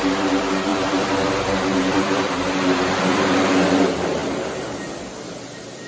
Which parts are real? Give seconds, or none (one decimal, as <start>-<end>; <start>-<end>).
4.2-5.5